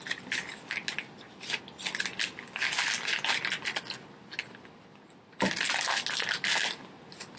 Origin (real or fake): real